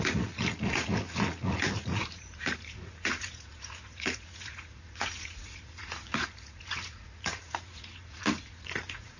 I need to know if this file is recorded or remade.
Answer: remade